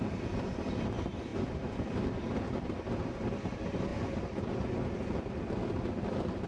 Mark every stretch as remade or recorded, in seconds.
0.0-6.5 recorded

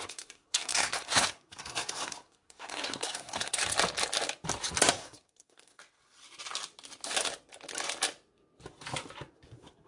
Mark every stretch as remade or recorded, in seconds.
0.0-3.6 remade; 3.6-4.9 recorded; 4.9-5.8 remade; 5.8-9.3 recorded; 9.3-9.9 remade

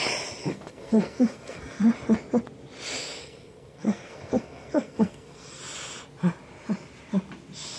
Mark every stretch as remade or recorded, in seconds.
0.0-0.4 recorded; 0.4-1.8 remade; 1.8-3.2 recorded; 3.2-5.6 remade; 5.6-7.8 recorded

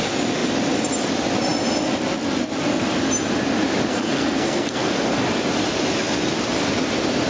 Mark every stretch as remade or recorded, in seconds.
0.0-3.9 recorded; 3.9-5.2 remade; 5.2-7.3 recorded

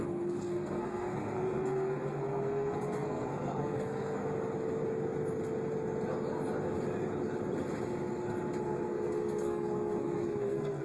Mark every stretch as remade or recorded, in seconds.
0.0-4.2 remade; 4.2-8.6 recorded; 8.6-10.8 remade